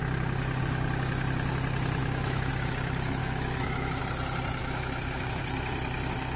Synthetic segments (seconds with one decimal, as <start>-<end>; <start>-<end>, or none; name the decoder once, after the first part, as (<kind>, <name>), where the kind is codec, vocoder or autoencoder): 2.0-2.5 (autoencoder, DAC-VAE); 3.2-4.0; 4.6-5.4